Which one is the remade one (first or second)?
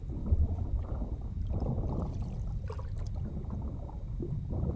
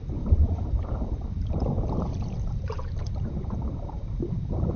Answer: second